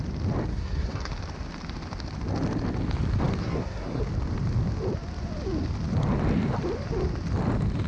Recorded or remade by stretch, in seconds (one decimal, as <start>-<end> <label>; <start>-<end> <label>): 0.0-0.5 recorded; 0.5-1.1 remade; 1.1-3.4 recorded; 3.4-4.0 remade; 4.0-7.9 recorded